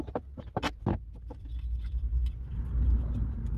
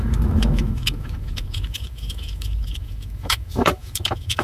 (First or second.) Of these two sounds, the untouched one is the first